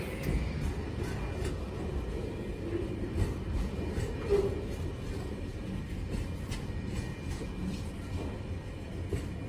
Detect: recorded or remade recorded